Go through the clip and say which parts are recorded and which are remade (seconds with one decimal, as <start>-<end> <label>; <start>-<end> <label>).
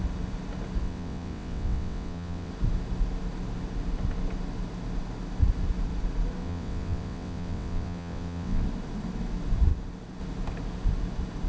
0.0-0.8 recorded; 0.8-2.5 remade; 2.5-6.4 recorded; 6.4-8.6 remade; 8.6-11.5 recorded